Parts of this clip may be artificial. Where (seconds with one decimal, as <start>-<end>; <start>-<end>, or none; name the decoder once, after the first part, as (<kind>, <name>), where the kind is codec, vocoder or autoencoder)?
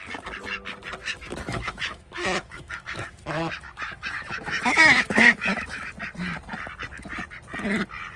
1.0-5.9 (autoencoder, DAC-VAE)